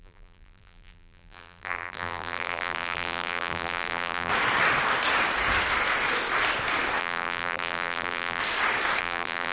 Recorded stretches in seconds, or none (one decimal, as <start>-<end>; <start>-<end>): 4.3-7.0; 8.4-9.0